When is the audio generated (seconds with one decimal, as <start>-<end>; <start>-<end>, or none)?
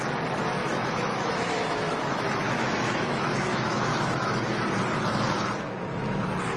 0.6-4.6